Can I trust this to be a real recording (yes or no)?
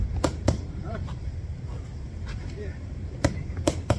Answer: no